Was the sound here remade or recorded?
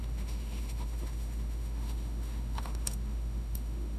remade